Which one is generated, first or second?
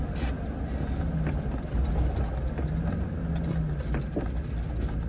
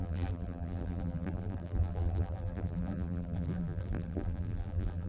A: second